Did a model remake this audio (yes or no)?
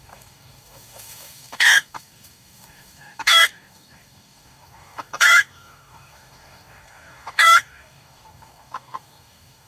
yes